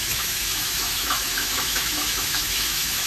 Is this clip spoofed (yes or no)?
yes